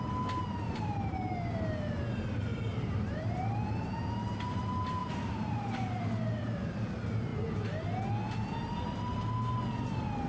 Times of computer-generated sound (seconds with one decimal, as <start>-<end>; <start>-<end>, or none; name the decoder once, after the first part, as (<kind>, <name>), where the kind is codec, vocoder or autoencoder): 2.5-3.9 (vocoder, BigVGAN v2); 5.0-5.9